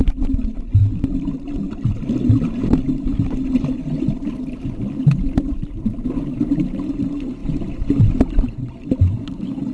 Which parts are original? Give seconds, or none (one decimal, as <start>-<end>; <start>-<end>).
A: 0.0-0.8; 2.1-7.4; 8.2-9.7

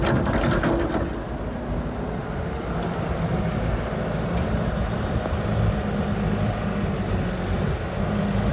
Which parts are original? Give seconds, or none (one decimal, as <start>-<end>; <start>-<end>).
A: 0.0-8.5

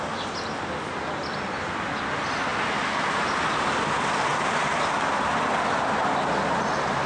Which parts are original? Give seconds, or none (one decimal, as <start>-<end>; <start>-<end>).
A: 0.0-7.1